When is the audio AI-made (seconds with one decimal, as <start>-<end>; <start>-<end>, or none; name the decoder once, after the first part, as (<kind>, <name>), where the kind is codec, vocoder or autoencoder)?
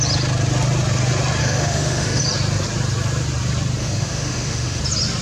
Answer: 1.4-2.2 (autoencoder, DAC-VAE); 3.8-4.8